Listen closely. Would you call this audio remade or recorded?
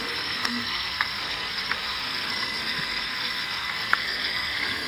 remade